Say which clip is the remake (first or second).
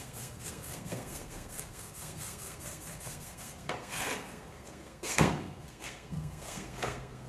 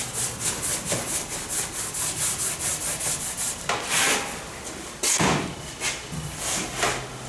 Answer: first